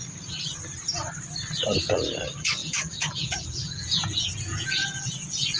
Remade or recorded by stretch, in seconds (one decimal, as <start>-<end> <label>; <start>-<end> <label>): 0.0-2.6 recorded; 2.6-5.6 remade